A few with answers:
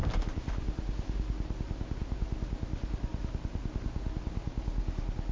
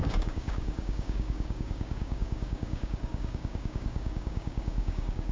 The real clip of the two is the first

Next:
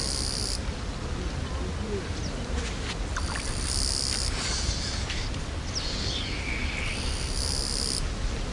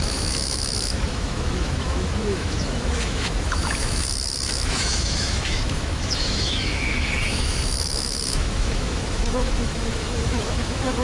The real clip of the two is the first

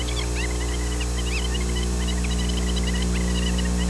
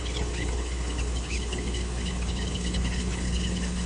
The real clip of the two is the first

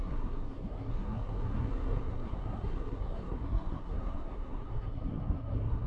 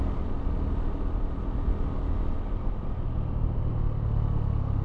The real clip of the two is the second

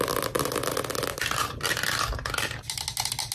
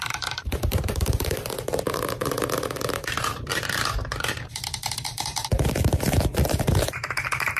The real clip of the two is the first